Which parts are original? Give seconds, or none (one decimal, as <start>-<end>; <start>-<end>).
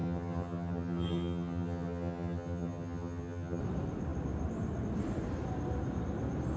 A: 3.6-6.6